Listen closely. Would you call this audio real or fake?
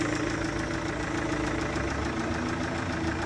real